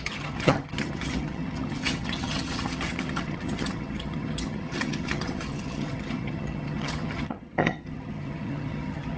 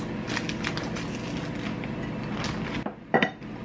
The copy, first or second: first